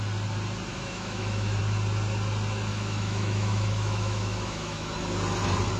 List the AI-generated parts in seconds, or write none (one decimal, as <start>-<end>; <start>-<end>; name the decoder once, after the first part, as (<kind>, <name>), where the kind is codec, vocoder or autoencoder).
0.7-1.6 (autoencoder, DAC-VAE); 2.7-4.9